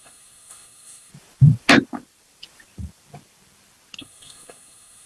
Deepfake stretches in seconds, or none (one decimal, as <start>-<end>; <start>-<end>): 0.0-1.1; 4.0-5.1